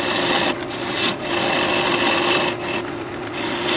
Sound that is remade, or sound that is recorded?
recorded